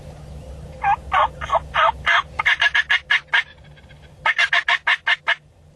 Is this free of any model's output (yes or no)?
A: yes